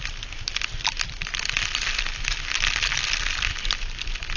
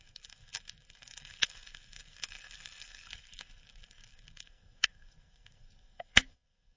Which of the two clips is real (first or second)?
first